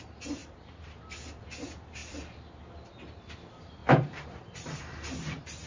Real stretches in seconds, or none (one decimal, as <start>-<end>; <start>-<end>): 0.0-0.4; 1.0-3.8